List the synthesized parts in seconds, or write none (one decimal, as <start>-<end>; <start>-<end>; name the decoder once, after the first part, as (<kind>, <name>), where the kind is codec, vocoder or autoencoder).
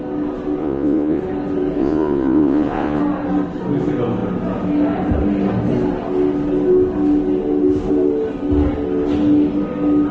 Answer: 0.6-1.2 (vocoder, Vocos); 1.8-3.0